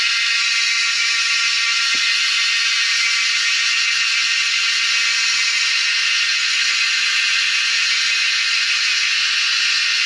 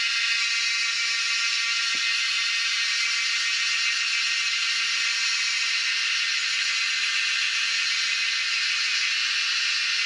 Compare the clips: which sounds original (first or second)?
second